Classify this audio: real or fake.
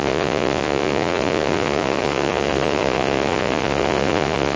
fake